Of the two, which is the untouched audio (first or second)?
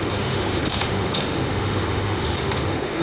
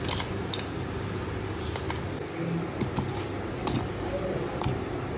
second